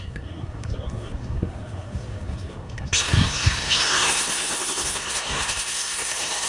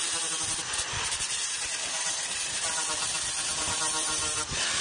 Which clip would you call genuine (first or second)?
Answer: second